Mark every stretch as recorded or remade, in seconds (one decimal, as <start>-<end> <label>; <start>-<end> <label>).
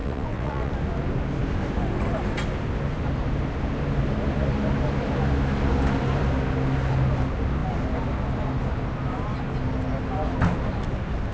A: 0.0-0.7 remade; 0.7-11.3 recorded